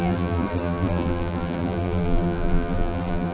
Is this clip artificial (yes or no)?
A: yes